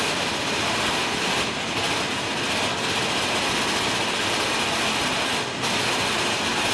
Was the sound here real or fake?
real